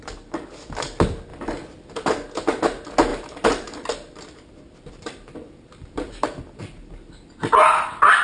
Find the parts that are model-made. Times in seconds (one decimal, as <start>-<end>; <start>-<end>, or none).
1.3-2.1; 3.1-8.2